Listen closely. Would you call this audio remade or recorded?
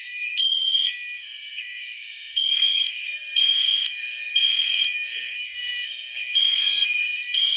remade